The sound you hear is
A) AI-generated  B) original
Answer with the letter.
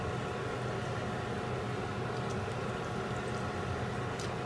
B